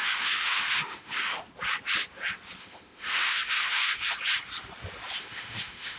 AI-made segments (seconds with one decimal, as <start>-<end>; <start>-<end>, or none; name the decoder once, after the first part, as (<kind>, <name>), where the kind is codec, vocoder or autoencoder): 0.0-1.4 (autoencoder, DAC-VAE); 2.6-4.1; 5.2-6.0